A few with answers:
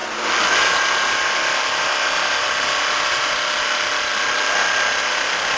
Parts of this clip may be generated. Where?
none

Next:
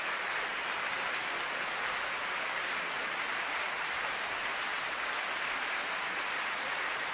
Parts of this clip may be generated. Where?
none

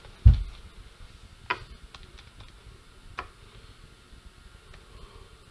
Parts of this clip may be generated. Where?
none

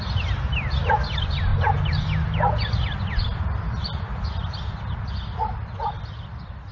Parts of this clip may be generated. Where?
none

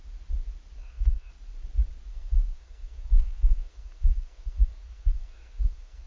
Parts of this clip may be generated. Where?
0.8-1.3 (codec, SNAC); 2.1-6.1

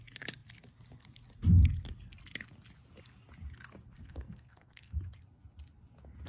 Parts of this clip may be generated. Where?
4.0-5.0 (codec, SNAC)

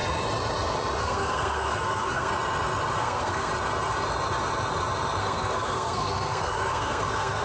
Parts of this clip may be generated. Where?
1.0-2.3 (codec, SNAC); 3.0-3.5; 5.2-7.4

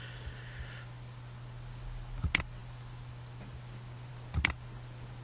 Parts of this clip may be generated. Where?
none